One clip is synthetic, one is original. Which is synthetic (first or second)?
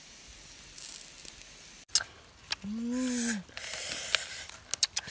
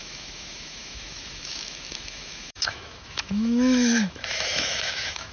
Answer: second